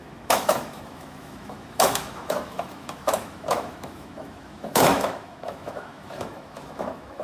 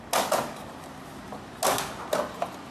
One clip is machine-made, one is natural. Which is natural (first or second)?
second